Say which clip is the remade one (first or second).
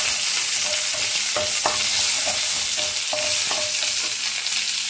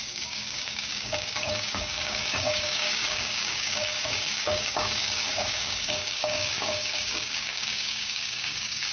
second